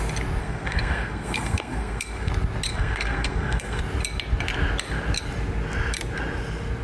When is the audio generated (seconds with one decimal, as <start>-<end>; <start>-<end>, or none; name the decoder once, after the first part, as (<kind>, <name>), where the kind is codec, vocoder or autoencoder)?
0.4-2.3 (codec, SNAC); 2.7-3.8